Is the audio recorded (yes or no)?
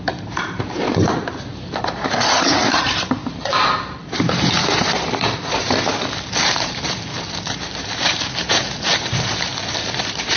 no